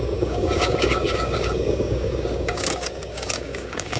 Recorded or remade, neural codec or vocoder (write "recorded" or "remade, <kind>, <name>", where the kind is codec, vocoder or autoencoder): remade, codec, DAC